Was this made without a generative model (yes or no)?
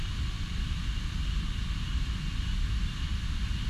yes